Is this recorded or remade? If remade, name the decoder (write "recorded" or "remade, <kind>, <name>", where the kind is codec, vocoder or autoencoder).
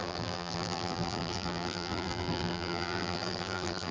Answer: remade, vocoder, BigVGAN v2